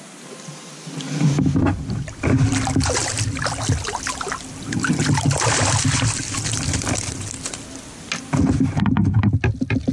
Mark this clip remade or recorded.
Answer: recorded